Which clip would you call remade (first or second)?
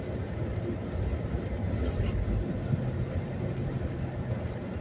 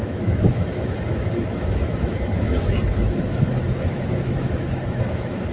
second